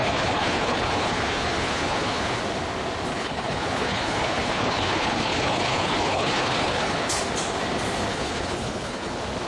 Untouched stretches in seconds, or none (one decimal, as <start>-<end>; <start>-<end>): 2.4-3.1; 7.2-8.1; 9.1-9.5